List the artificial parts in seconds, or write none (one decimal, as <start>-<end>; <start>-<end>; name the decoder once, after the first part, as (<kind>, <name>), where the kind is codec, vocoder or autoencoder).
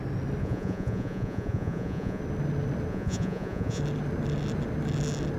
0.4-2.2 (vocoder, Vocos); 2.9-3.8